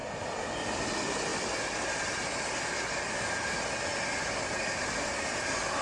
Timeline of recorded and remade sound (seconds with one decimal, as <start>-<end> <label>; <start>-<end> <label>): 0.0-5.8 recorded